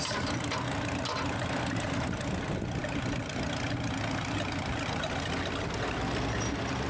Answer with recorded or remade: recorded